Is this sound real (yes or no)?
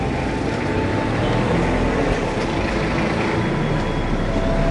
yes